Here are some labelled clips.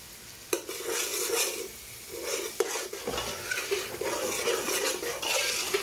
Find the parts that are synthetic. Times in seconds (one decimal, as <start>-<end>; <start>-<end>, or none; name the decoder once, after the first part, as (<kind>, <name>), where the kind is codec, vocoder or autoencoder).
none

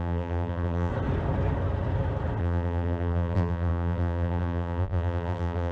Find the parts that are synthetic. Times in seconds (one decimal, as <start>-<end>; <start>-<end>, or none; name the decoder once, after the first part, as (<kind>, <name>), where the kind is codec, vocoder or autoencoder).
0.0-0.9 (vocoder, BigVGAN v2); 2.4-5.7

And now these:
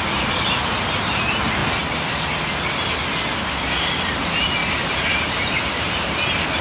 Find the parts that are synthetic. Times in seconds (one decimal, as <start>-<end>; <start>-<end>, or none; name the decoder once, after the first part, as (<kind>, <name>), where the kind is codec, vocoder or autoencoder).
4.8-6.1 (vocoder, BigVGAN v2)

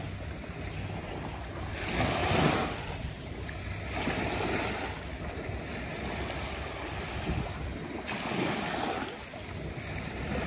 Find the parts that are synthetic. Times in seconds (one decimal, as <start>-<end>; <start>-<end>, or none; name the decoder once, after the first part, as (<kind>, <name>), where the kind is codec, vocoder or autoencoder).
2.2-3.1 (vocoder, BigVGAN v2)